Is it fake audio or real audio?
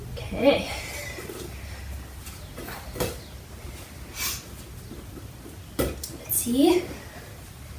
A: real